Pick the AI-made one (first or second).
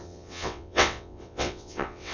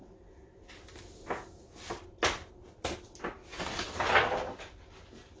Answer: first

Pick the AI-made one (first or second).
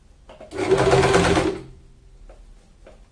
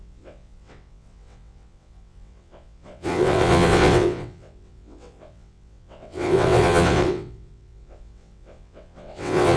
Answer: second